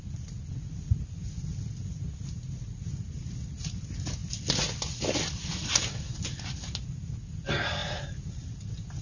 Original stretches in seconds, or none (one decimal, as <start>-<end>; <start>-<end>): 0.0-9.0